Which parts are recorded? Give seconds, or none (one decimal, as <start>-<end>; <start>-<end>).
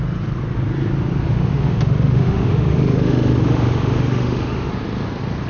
0.0-1.4; 4.7-5.5